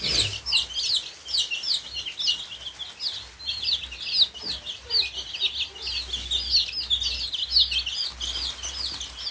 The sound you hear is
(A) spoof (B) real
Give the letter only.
B